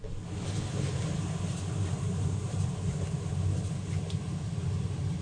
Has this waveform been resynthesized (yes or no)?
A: no